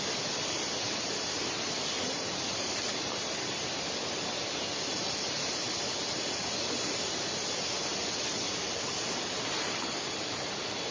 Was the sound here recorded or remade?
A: recorded